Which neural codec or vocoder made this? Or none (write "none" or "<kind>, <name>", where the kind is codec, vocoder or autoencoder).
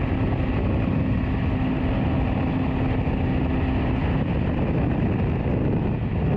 none